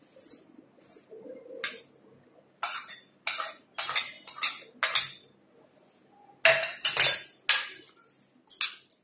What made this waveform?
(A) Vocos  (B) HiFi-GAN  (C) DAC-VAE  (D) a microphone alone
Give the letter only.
D